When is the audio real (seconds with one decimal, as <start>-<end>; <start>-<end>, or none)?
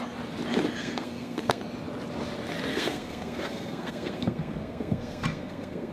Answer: 0.0-0.8; 1.6-2.7